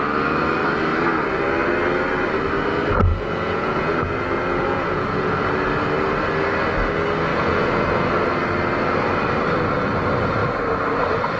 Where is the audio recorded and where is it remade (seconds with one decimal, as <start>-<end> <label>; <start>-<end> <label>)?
0.0-3.1 recorded; 3.1-5.3 remade; 5.3-7.3 recorded; 7.3-8.1 remade; 8.1-11.4 recorded